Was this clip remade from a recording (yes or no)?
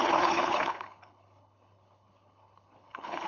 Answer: yes